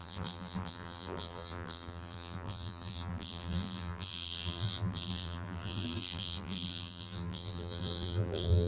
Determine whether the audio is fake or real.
fake